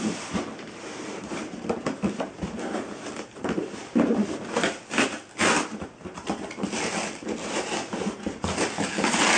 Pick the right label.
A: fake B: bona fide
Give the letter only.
A